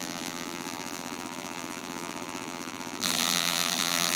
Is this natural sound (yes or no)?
no